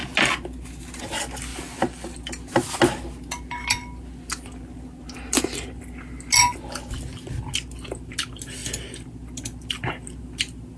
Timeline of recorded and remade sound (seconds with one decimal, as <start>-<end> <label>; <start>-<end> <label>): 0.0-10.8 recorded